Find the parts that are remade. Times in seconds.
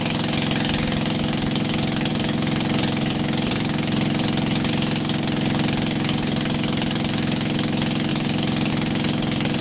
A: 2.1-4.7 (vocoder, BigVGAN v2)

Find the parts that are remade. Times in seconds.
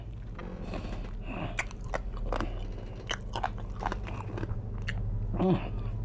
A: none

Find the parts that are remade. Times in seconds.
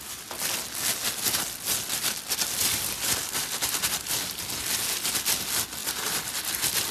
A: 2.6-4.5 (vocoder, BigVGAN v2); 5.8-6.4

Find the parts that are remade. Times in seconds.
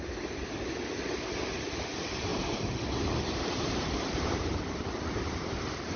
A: 0.0-6.0 (vocoder, BigVGAN v2)